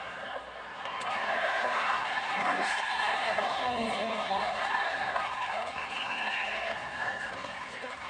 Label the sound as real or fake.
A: fake